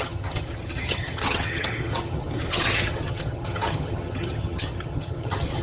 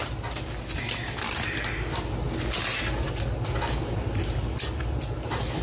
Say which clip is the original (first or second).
second